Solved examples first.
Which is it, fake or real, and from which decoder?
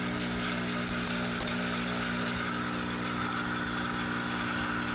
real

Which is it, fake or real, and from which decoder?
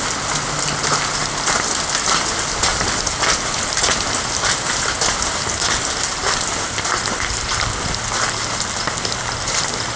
real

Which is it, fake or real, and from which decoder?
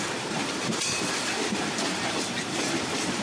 fake, vocoder, BigVGAN v2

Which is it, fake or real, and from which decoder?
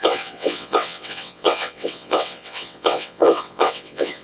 fake, vocoder, WaveNeXt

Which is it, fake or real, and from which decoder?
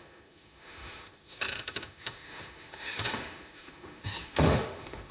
fake, autoencoder, DAC-VAE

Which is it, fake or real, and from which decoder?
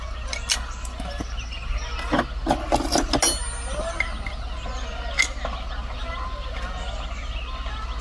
real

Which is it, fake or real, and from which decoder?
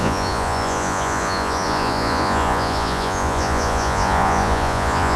fake, vocoder, Vocos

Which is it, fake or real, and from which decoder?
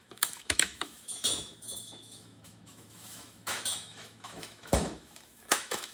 fake, autoencoder, DAC-VAE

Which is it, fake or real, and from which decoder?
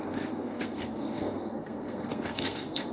fake, codec, SNAC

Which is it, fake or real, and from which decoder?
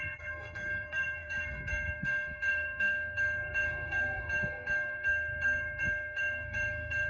fake, codec, SNAC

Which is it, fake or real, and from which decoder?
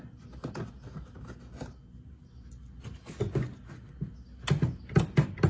real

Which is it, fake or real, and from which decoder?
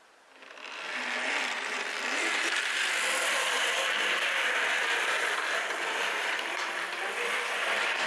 fake, vocoder, BigVGAN v2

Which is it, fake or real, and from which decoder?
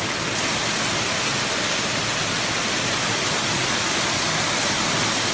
real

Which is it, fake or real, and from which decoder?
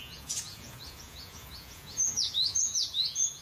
fake, vocoder, Vocos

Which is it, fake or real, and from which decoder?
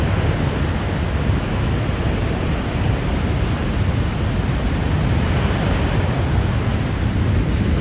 real